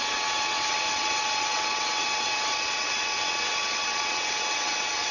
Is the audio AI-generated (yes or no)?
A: yes